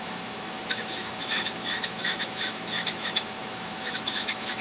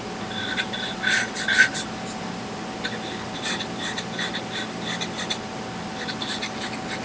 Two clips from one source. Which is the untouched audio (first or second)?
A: second